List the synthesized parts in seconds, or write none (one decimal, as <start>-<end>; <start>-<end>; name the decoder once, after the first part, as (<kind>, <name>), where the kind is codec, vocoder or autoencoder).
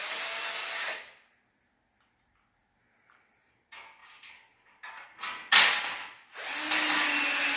0.6-1.3 (codec, DAC)